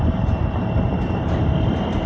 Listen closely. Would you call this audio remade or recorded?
recorded